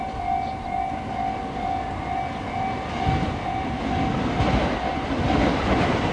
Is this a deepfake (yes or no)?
no